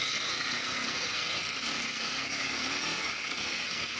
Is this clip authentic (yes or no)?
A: no